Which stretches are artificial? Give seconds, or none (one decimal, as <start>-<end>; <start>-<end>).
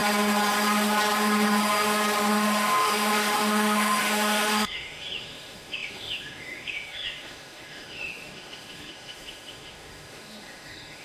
2.3-11.0